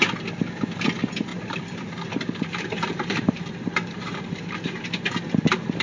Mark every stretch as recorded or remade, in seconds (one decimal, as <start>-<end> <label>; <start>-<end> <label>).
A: 0.0-1.3 recorded; 1.3-4.8 remade; 4.8-5.8 recorded